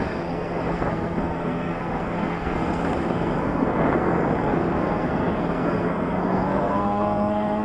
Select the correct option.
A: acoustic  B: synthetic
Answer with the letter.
B